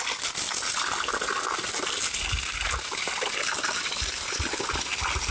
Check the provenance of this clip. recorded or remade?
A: recorded